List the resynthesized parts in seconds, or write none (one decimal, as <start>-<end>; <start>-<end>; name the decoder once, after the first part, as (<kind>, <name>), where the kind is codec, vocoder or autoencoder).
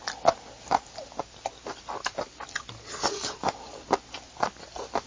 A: none